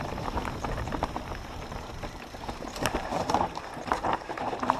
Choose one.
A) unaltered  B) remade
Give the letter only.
B